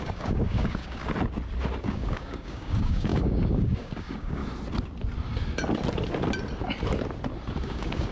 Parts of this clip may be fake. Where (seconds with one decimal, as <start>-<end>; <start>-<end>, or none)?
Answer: 0.0-1.0; 1.8-4.4; 7.6-8.1